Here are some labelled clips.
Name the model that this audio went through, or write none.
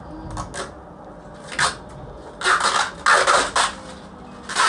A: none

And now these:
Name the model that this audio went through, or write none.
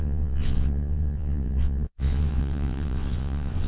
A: vocoder, WaveNeXt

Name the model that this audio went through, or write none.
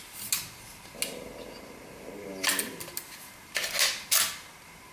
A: none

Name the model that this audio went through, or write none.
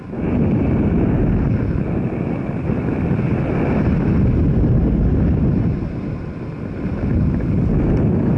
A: none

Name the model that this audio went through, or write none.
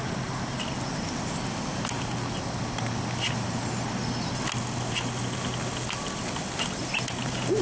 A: none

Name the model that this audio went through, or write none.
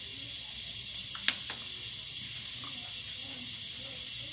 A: none